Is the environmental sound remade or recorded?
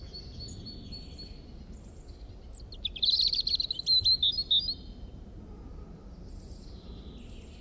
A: recorded